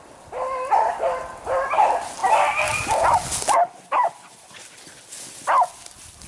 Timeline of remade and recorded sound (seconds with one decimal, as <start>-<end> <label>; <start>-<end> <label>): 0.0-6.3 recorded